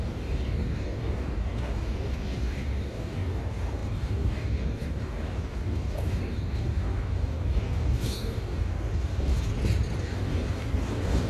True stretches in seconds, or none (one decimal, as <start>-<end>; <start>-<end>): 9.5-10.0